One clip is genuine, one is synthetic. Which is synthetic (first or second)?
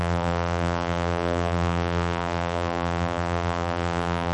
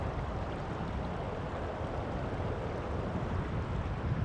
first